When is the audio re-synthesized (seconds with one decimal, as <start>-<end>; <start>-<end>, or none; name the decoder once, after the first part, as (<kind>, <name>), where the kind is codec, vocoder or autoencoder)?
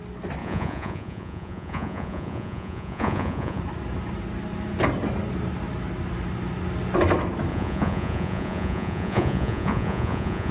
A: 0.4-3.6 (vocoder, Vocos); 7.5-10.5